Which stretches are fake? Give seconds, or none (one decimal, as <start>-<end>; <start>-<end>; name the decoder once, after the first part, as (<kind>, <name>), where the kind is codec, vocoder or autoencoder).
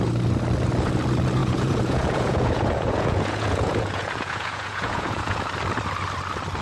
1.4-5.4 (vocoder, Vocos)